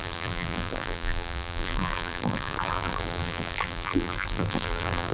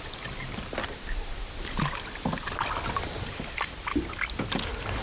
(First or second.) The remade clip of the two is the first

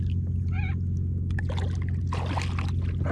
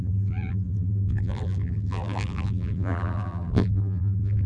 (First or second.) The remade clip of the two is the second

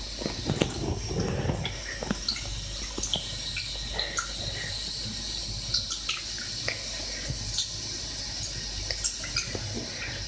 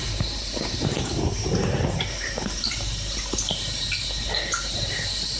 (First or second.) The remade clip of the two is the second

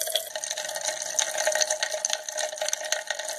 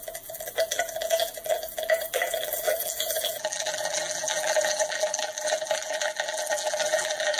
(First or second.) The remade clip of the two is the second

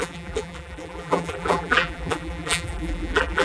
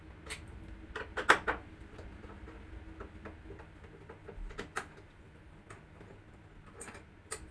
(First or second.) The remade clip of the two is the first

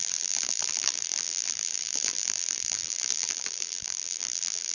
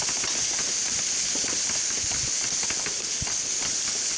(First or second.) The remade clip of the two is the first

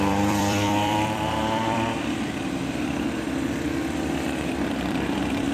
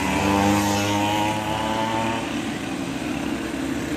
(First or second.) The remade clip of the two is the first